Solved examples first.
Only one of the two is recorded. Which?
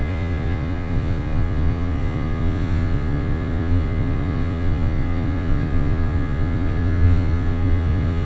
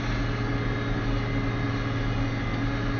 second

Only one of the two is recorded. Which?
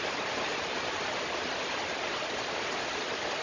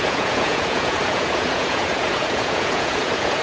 first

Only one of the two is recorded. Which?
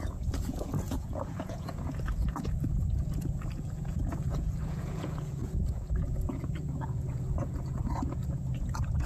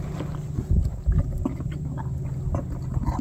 second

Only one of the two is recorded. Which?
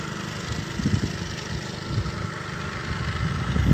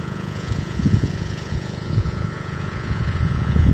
first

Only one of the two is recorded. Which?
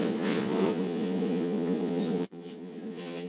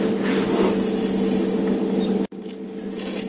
second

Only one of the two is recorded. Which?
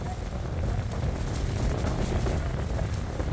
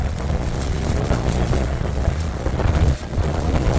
first